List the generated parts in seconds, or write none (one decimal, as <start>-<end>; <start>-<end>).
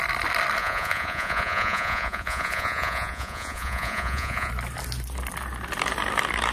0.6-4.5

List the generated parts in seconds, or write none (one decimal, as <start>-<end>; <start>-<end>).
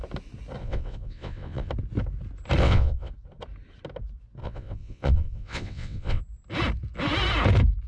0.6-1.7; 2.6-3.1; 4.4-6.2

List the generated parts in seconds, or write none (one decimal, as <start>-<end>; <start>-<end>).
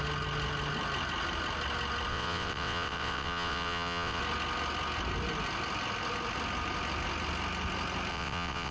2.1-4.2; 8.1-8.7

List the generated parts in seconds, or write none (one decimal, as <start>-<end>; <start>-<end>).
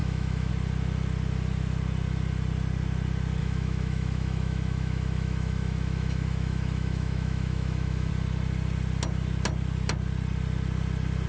0.0-0.5; 3.4-8.1